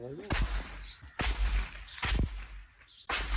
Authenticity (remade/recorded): recorded